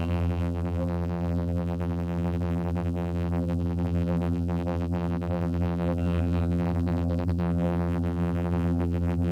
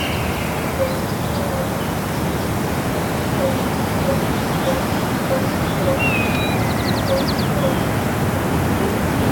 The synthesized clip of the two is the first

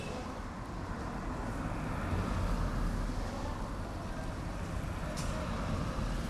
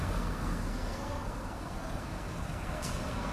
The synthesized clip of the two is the second